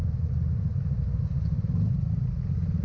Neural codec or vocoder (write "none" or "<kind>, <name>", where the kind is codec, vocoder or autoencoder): none